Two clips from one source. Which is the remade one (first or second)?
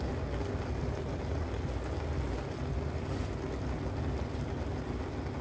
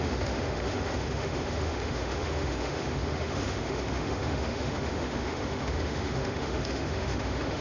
second